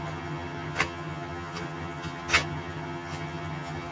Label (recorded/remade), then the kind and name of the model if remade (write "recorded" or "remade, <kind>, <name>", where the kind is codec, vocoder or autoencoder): remade, vocoder, HiFi-GAN